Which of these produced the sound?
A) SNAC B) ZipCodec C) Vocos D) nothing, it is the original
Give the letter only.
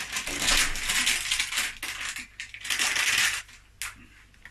D